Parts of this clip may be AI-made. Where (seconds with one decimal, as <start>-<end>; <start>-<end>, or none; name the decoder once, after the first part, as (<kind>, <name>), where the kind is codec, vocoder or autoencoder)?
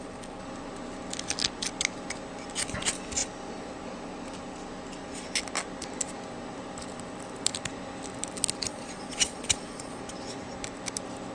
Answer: 8.7-10.0 (vocoder, Vocos)